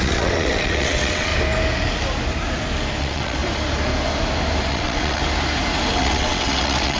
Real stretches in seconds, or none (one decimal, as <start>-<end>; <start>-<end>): 1.3-3.0; 3.4-4.7; 5.2-5.9